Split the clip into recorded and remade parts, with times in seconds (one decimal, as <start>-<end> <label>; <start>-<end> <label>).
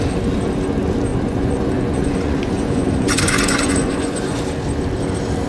0.0-1.1 recorded; 1.1-4.4 remade; 4.4-5.5 recorded